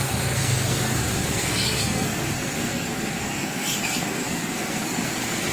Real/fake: fake